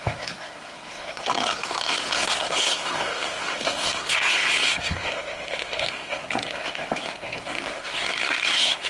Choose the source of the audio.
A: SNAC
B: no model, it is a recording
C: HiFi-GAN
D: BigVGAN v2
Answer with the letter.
A